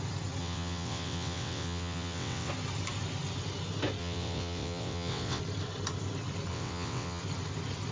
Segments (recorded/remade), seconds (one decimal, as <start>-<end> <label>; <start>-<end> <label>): 0.0-0.4 recorded; 0.4-2.5 remade; 2.5-4.0 recorded; 4.0-5.4 remade; 5.4-6.5 recorded; 6.5-7.2 remade; 7.2-7.9 recorded